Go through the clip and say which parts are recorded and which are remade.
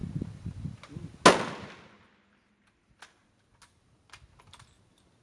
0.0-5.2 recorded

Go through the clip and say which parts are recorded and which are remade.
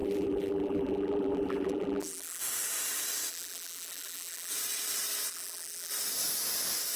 0.0-2.4 remade; 2.4-3.3 recorded; 3.3-4.5 remade; 4.5-5.3 recorded; 5.3-5.9 remade; 5.9-7.0 recorded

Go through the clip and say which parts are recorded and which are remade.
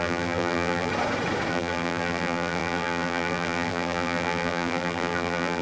0.0-0.9 remade; 0.9-1.5 recorded; 1.5-5.6 remade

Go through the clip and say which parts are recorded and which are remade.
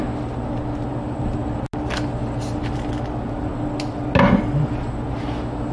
0.0-5.7 recorded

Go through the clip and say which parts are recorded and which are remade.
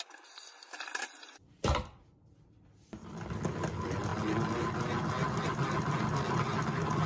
0.0-1.2 recorded; 1.2-1.9 remade; 1.9-7.1 recorded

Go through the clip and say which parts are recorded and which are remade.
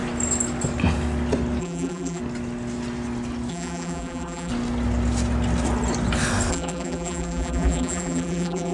0.0-1.6 recorded; 1.6-2.2 remade; 2.2-3.5 recorded; 3.5-4.5 remade; 4.5-6.5 recorded; 6.5-8.7 remade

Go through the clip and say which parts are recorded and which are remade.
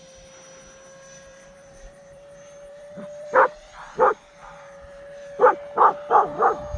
0.0-1.3 recorded; 1.3-5.4 remade; 5.4-6.8 recorded